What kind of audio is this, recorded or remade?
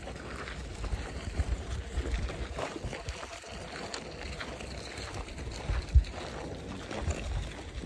recorded